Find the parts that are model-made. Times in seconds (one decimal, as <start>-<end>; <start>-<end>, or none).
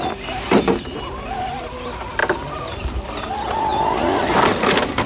none